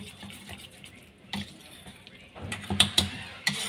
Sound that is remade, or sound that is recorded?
remade